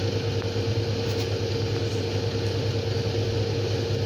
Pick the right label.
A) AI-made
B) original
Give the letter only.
B